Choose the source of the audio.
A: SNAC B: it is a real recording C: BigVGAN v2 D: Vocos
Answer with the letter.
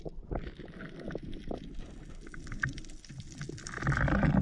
B